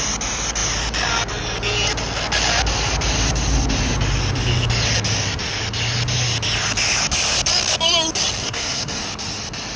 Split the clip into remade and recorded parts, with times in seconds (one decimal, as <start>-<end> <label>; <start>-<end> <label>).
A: 0.0-8.4 recorded; 8.4-9.0 remade; 9.0-9.8 recorded

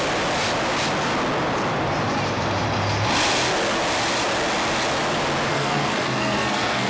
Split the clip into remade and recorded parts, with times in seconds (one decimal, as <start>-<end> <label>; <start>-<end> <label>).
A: 0.0-5.5 recorded; 5.5-6.9 remade

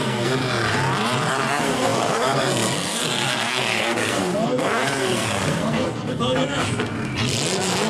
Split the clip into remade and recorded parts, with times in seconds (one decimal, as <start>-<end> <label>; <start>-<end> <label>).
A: 0.0-0.4 remade; 0.4-1.3 recorded; 1.3-7.1 remade; 7.1-7.9 recorded

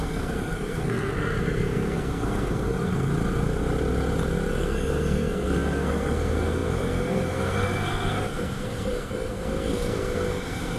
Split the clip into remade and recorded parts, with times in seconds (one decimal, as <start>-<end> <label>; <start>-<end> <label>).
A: 0.0-3.1 remade; 3.1-4.6 recorded; 4.6-10.8 remade

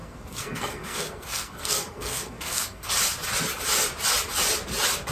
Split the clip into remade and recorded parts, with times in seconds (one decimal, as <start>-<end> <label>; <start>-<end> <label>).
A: 0.0-2.9 remade; 2.9-5.1 recorded